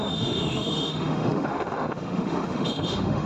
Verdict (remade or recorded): remade